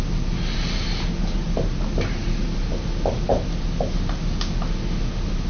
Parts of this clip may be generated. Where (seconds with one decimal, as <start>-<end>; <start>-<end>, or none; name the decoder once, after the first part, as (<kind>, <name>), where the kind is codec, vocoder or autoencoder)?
none